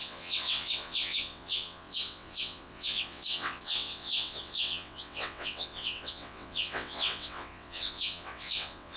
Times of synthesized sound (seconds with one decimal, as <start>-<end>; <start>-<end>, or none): 0.0-9.0